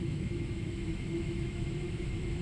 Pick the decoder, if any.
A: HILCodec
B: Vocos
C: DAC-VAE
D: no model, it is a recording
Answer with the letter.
C